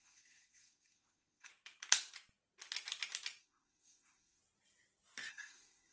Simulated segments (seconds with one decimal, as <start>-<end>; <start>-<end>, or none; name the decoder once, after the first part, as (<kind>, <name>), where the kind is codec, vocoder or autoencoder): 0.0-1.5 (codec, SNAC); 3.4-4.4; 5.3-5.9

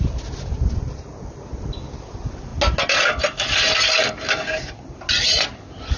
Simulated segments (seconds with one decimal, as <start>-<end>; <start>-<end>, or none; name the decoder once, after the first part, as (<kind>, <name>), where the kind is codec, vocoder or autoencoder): none